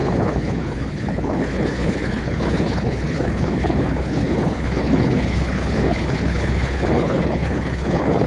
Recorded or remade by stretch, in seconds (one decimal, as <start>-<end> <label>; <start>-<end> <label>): 0.0-8.3 remade